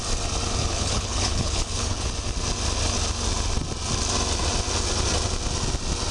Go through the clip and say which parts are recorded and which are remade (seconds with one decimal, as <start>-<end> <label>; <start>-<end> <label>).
0.0-0.6 recorded; 0.6-2.1 remade; 2.1-6.1 recorded